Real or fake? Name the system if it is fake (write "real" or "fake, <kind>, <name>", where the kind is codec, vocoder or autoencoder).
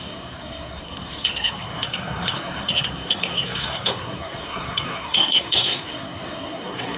fake, codec, SNAC